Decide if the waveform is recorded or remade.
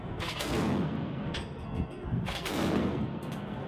remade